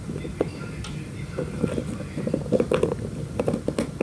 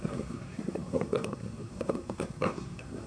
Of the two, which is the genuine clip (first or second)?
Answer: first